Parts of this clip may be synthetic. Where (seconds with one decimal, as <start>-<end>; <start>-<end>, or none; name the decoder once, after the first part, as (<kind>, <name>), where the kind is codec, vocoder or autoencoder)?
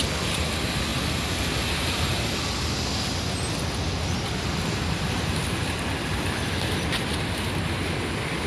none